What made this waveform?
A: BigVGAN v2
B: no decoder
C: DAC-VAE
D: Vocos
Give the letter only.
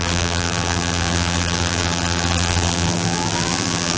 A